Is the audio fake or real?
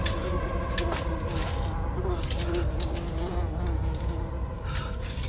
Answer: real